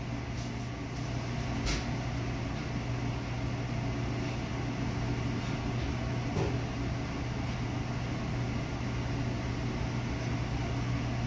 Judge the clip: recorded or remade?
recorded